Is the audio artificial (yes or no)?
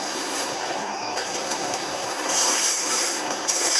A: yes